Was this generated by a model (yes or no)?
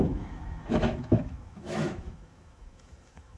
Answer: yes